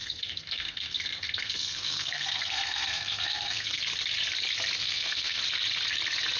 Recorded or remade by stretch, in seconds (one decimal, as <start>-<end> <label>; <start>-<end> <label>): 0.0-3.8 remade; 3.8-4.8 recorded; 4.8-5.4 remade; 5.4-6.4 recorded